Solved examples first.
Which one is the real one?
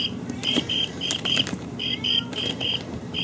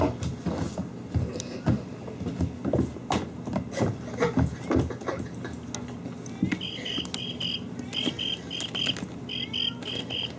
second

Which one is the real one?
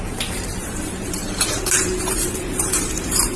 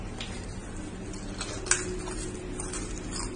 second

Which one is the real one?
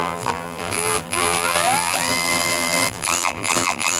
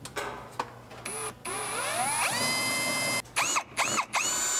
second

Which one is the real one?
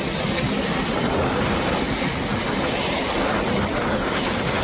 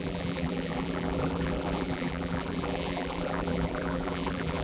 first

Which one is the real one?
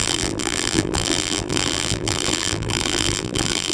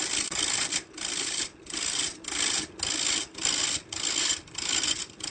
second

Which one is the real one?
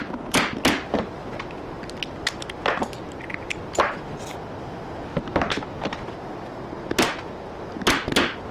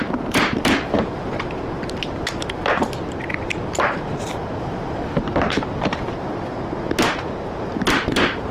first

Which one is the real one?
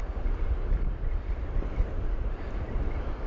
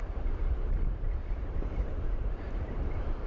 first